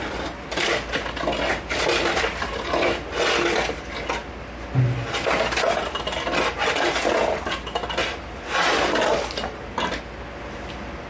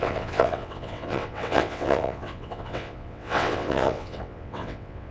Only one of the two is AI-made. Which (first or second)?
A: second